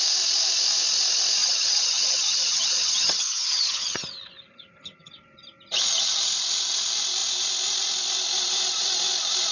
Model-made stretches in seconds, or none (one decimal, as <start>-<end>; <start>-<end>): 1.4-5.1